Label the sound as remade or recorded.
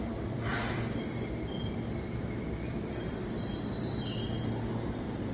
recorded